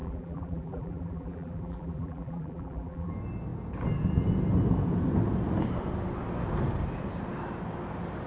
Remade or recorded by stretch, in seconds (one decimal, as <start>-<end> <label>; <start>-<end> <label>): 0.0-3.1 remade; 3.1-8.3 recorded